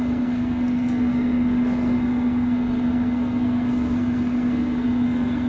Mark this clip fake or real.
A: fake